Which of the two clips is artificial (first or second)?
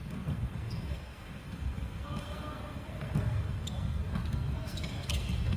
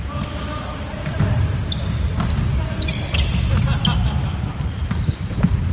first